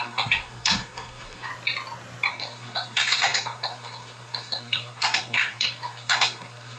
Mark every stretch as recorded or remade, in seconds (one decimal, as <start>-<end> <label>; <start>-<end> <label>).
0.0-1.5 remade; 1.5-2.3 recorded; 2.3-6.8 remade